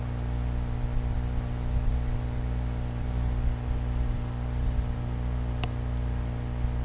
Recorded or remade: recorded